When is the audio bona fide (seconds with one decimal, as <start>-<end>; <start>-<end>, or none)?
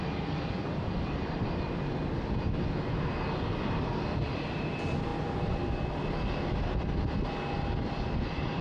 0.0-8.6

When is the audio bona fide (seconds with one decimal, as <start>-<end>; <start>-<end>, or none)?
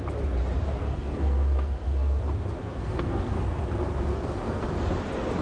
0.0-0.8; 2.2-2.6; 3.6-4.1; 4.7-5.4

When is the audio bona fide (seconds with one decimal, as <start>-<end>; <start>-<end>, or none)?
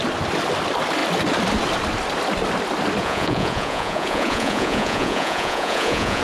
0.0-3.0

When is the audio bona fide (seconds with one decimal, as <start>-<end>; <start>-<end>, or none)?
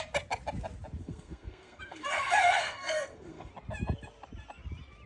0.0-1.0; 3.5-5.1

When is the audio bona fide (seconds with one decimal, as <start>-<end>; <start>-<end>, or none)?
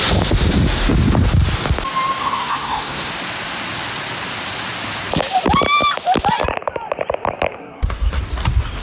0.0-2.2; 3.1-7.6; 8.2-8.8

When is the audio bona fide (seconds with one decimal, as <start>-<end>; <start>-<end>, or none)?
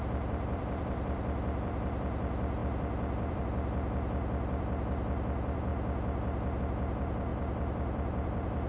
5.7-6.6